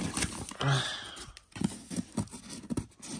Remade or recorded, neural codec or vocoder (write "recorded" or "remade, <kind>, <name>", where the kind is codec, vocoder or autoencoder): recorded